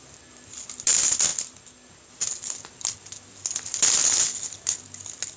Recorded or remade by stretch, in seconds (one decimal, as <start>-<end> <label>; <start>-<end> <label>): 0.0-5.4 recorded